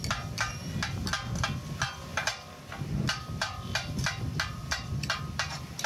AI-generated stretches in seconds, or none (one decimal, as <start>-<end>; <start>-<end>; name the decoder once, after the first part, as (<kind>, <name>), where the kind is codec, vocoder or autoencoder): 2.1-2.6 (vocoder, BigVGAN v2); 4.6-5.2